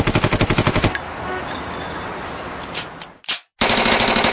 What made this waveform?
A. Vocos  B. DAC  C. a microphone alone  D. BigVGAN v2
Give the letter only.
C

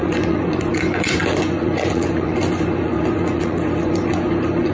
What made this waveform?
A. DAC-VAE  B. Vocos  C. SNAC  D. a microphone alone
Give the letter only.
B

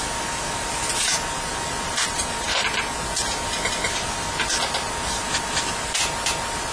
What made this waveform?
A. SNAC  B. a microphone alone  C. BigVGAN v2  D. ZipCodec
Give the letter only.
B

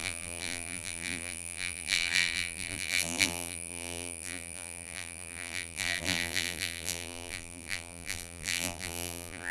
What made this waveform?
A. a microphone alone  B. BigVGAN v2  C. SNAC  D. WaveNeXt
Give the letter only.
B